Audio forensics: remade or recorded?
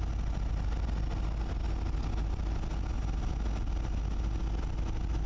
recorded